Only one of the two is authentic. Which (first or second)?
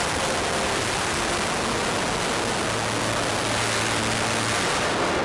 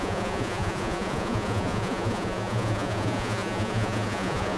first